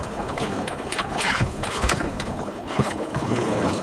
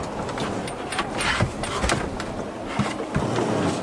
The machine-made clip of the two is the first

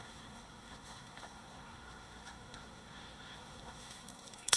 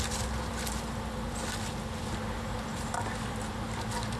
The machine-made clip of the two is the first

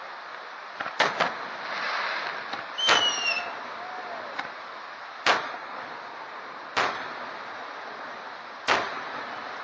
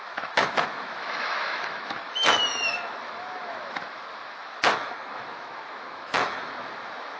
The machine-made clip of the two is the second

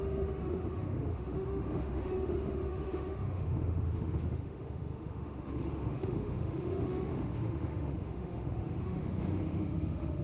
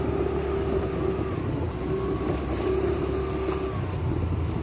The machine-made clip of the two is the first